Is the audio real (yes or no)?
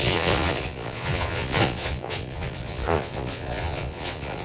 no